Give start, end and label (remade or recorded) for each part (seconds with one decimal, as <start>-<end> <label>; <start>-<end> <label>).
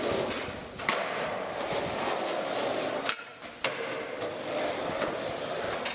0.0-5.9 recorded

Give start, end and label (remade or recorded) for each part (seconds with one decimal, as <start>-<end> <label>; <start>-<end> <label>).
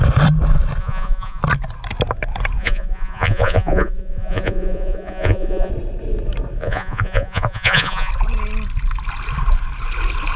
0.0-0.8 recorded; 0.8-1.4 remade; 1.4-2.6 recorded; 2.6-5.7 remade; 5.7-6.6 recorded; 6.6-8.1 remade; 8.1-10.4 recorded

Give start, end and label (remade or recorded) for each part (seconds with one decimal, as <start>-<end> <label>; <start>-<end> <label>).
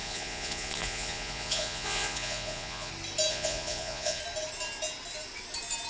0.0-2.9 remade; 2.9-3.3 recorded; 3.3-4.2 remade; 4.2-5.9 recorded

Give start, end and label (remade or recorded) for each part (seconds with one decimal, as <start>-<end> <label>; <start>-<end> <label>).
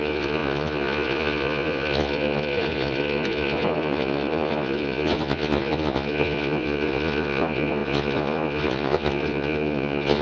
0.0-10.2 remade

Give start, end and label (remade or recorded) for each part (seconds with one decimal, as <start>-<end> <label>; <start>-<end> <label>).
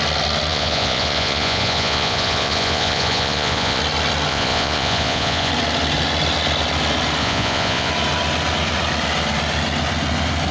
0.0-0.5 recorded; 0.5-3.8 remade; 3.8-4.3 recorded; 4.3-5.5 remade; 5.5-7.2 recorded; 7.2-7.9 remade; 7.9-10.5 recorded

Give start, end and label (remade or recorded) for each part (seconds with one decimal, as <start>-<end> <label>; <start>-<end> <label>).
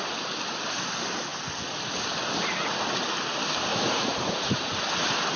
0.0-3.7 recorded; 3.7-4.8 remade; 4.8-5.4 recorded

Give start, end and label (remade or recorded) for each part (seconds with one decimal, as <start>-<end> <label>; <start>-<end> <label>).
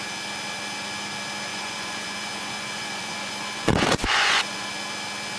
0.0-1.5 recorded; 1.5-4.7 remade; 4.7-5.4 recorded